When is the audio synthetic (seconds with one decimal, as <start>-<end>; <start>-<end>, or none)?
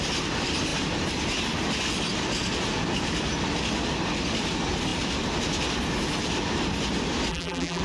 7.3-7.8